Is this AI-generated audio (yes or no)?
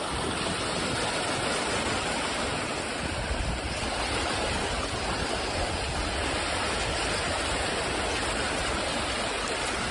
no